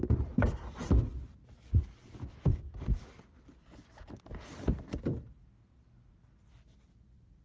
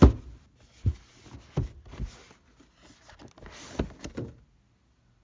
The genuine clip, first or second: second